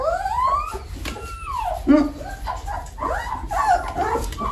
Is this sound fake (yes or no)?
no